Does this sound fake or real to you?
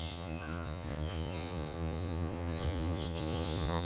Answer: fake